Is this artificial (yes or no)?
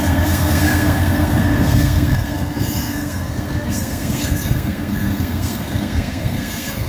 yes